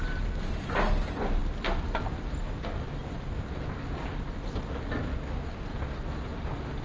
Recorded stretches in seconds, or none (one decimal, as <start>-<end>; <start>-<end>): 0.0-6.8